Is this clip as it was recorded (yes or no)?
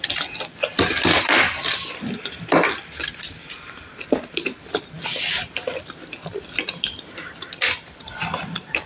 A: no